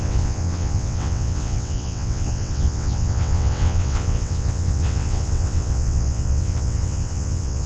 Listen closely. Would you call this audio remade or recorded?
remade